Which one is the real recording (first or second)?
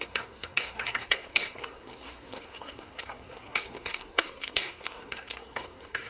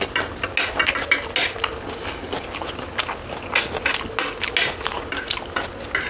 second